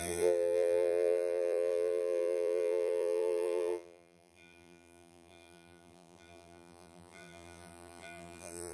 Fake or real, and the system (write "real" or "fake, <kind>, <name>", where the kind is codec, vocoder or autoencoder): fake, vocoder, BigVGAN v2